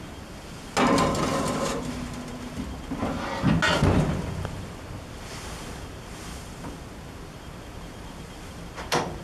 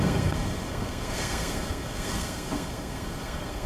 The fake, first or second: second